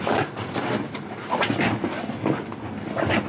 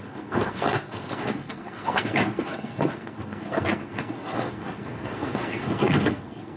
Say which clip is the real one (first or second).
first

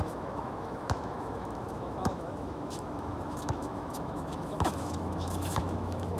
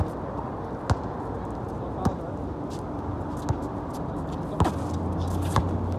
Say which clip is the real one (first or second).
second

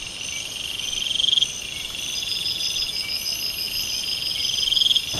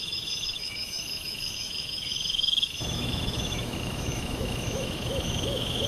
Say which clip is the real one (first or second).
first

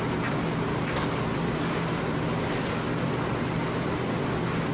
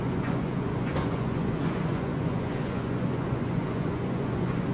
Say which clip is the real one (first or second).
first